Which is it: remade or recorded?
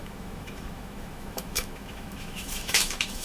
remade